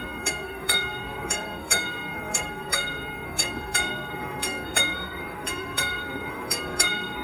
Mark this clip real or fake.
fake